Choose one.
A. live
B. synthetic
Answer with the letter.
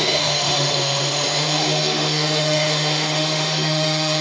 B